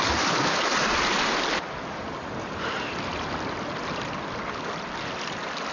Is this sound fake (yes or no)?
no